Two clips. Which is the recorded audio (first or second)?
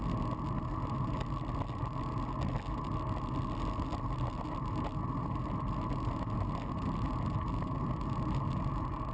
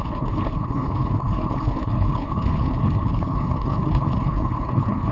first